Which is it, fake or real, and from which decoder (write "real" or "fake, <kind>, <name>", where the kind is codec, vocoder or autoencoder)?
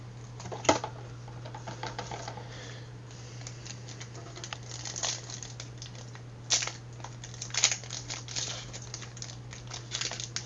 real